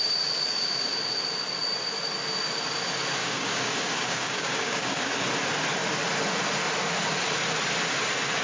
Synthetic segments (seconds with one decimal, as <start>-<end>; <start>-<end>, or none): 3.2-5.2